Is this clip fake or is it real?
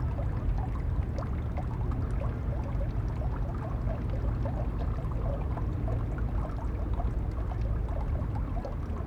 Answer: real